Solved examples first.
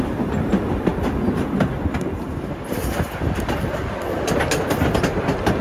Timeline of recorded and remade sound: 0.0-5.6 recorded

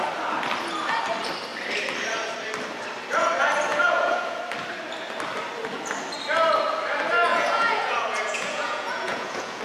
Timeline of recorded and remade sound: 0.0-3.7 recorded; 3.7-4.4 remade; 4.4-7.3 recorded; 7.3-9.6 remade